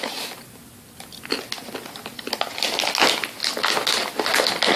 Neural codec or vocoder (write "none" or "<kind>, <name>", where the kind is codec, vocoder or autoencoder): none